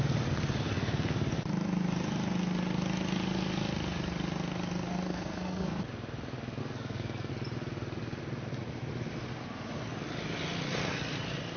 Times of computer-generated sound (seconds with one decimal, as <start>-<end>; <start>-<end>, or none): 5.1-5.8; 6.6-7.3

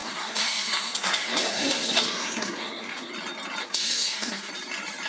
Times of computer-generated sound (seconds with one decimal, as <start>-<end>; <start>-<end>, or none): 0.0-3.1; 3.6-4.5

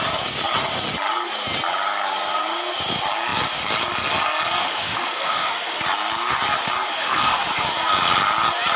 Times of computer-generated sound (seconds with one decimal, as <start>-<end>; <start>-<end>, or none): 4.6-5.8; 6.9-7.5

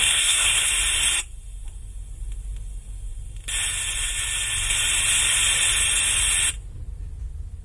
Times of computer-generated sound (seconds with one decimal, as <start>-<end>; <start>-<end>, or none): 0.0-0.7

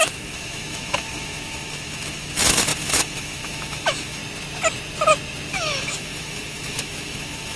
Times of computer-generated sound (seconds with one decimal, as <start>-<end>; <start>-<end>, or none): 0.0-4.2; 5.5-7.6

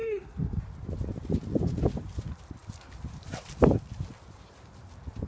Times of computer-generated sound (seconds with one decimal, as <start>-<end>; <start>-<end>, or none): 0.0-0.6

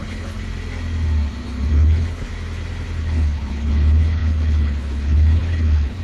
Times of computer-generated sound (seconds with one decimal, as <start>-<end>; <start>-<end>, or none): 0.0-0.4; 1.7-2.3; 3.0-6.0

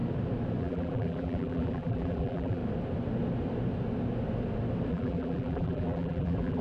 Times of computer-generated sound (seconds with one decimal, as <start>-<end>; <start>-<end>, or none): 0.6-2.6; 4.9-6.6